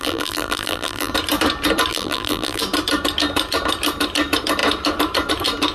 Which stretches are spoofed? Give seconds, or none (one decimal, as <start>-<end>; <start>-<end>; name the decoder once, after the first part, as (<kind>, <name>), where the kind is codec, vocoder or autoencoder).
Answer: 0.0-1.1 (vocoder, BigVGAN v2); 1.9-2.6